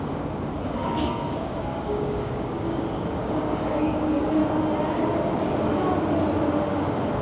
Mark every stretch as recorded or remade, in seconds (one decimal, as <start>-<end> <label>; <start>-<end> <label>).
0.0-4.4 remade; 4.4-6.6 recorded; 6.6-7.2 remade